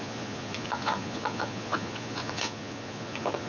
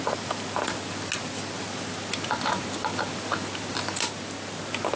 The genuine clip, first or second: second